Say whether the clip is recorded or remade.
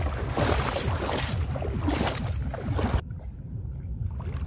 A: recorded